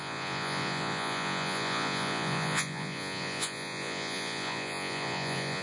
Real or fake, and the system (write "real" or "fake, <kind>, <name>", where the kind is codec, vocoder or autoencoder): fake, vocoder, Vocos